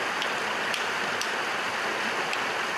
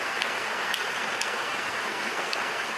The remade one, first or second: second